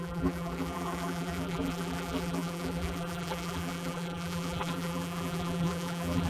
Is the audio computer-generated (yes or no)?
yes